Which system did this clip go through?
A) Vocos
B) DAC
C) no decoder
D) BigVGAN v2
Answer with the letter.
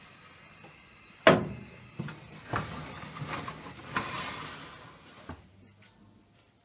C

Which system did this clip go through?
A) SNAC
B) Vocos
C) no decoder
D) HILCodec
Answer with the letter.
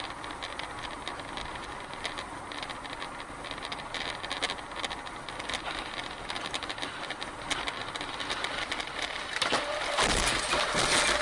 C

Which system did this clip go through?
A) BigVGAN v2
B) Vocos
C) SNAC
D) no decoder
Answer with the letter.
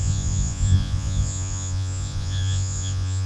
B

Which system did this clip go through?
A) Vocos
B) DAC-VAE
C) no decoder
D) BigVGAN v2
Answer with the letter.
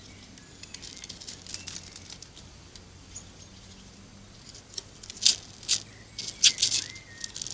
C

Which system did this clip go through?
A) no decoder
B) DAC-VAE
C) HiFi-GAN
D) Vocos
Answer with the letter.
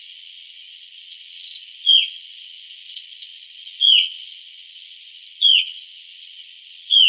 D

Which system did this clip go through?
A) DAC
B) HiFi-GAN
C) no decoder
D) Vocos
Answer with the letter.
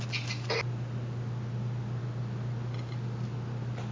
C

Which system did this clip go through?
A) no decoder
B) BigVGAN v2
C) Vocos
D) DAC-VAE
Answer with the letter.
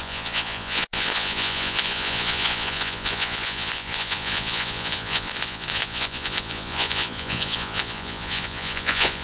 C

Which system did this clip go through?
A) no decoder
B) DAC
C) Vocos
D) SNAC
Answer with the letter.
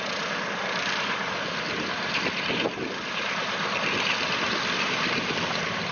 A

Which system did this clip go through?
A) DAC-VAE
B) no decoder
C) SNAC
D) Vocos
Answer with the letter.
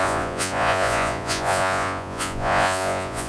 D